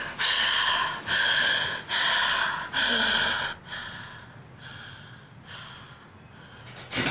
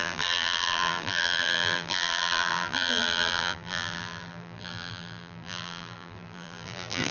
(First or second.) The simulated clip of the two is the second